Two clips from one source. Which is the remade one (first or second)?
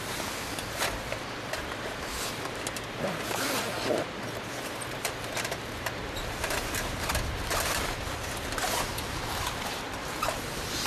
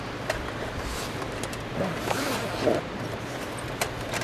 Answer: first